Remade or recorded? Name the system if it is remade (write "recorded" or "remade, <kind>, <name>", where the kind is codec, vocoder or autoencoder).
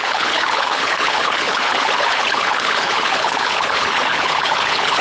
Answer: remade, codec, HILCodec